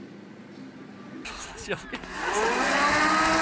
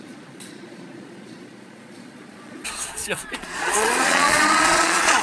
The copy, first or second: second